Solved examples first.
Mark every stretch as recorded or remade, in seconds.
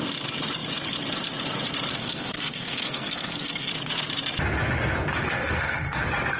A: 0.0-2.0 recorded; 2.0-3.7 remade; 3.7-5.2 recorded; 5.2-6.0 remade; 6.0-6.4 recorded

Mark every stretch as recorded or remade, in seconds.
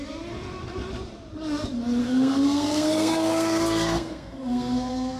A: 0.0-2.0 recorded; 2.0-5.2 remade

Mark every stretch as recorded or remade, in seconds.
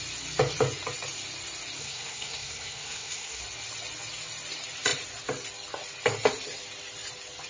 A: 0.0-1.8 recorded; 1.8-3.4 remade; 3.4-7.5 recorded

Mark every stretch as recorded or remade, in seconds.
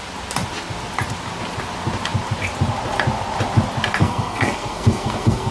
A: 0.0-4.0 recorded; 4.0-5.5 remade